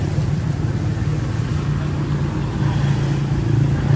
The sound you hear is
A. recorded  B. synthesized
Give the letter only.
A